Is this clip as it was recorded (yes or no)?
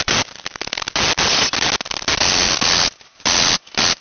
yes